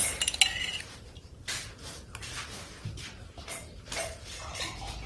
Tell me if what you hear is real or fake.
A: real